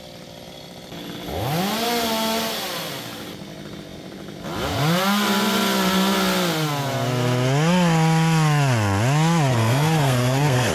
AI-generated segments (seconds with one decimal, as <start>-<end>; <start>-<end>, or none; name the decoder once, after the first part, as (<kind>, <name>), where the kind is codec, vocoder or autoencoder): 9.5-10.7 (codec, SNAC)